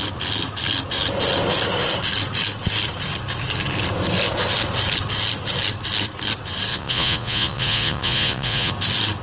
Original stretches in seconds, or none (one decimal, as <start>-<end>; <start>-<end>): 0.0-6.7; 8.7-9.2

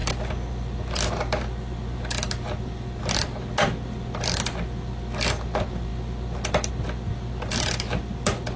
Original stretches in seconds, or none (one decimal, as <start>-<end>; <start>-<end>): 0.0-8.6

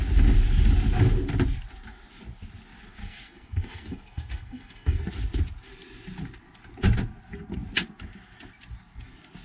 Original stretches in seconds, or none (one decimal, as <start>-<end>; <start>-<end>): 0.0-3.0; 5.1-9.4